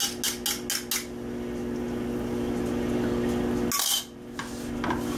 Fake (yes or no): no